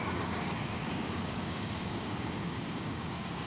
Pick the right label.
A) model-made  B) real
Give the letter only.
A